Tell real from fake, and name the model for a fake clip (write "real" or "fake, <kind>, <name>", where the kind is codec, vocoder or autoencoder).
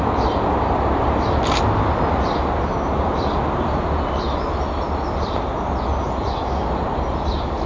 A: real